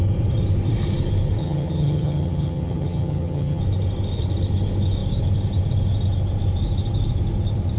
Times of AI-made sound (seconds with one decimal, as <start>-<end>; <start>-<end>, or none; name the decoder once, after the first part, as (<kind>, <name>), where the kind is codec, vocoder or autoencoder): 1.4-3.6 (vocoder, HiFi-GAN)